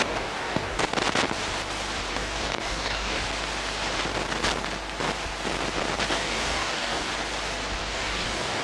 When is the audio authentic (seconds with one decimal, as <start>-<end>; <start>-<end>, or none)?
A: 0.9-2.1; 3.2-6.1; 7.1-7.8